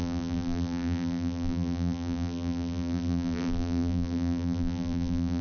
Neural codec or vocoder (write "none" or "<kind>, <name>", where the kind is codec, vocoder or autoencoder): vocoder, BigVGAN v2